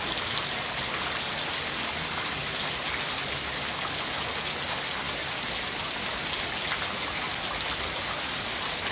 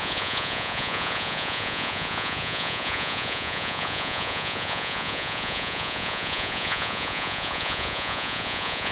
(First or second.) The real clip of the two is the first